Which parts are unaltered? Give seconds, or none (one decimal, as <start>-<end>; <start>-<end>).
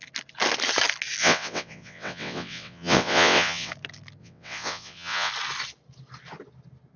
0.0-1.2; 3.7-4.2; 5.3-7.0